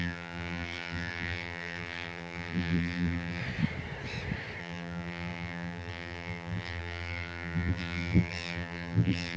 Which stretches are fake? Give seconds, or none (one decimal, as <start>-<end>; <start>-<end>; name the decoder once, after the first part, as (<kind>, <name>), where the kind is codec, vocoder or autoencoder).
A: 0.0-3.4 (vocoder, BigVGAN v2); 4.6-9.4